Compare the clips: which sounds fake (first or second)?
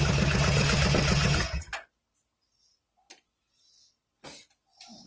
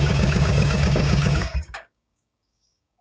second